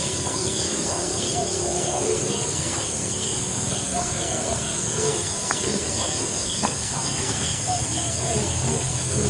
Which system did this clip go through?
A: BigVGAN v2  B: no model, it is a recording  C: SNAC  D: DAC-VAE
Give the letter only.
C